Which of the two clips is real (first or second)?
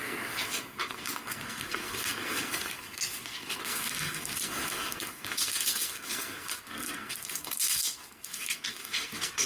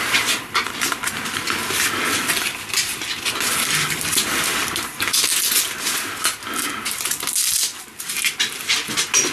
second